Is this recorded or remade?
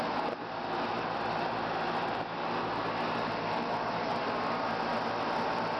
recorded